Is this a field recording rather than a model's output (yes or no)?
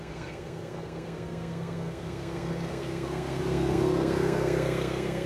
no